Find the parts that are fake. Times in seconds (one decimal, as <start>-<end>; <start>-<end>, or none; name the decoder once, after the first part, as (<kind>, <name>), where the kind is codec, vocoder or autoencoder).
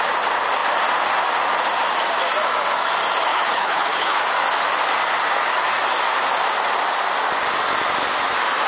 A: 3.3-4.2 (codec, HILCodec)